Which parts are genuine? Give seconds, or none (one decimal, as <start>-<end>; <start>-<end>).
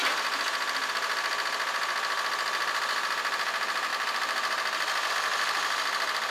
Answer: 0.0-3.9; 5.1-6.3